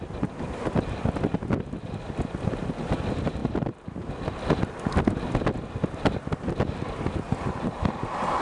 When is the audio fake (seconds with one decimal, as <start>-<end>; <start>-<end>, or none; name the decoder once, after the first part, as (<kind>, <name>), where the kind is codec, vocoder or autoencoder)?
none

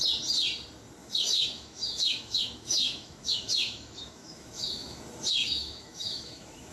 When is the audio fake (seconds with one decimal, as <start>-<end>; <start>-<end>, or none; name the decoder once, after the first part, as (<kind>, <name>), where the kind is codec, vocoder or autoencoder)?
1.0-5.0 (autoencoder, DAC-VAE); 5.4-6.7

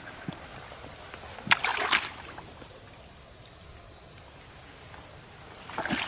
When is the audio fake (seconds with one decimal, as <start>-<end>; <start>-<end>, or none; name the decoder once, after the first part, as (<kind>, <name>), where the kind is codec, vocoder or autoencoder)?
none

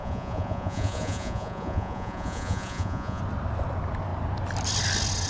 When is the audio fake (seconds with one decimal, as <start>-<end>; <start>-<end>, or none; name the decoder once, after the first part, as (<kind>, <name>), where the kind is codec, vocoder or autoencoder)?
0.0-3.2 (vocoder, Vocos)